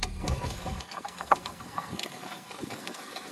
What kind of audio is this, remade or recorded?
remade